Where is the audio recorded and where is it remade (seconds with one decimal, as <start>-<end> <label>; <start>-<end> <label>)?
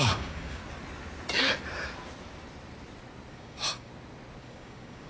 0.0-0.6 remade; 0.6-3.3 recorded; 3.3-3.9 remade; 3.9-4.4 recorded; 4.4-5.1 remade